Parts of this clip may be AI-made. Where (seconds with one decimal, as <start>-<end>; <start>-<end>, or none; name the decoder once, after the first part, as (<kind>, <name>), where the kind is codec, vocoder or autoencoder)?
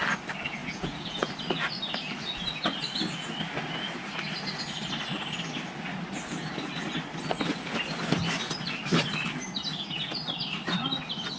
0.6-1.3 (vocoder, Vocos)